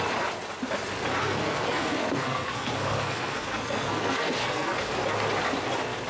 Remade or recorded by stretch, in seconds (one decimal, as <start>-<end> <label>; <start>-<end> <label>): 0.0-1.2 recorded; 1.2-4.9 remade; 4.9-6.1 recorded